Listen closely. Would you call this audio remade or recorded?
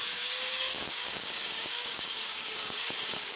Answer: remade